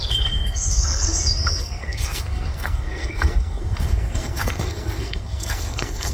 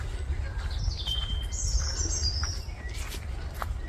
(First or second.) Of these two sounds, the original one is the second